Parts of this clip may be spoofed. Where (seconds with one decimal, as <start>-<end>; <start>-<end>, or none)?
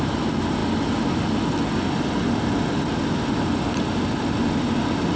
none